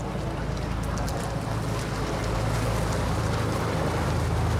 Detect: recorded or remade recorded